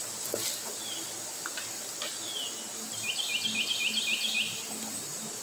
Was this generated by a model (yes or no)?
no